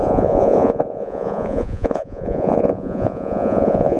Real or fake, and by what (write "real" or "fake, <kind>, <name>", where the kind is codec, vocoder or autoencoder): fake, vocoder, Vocos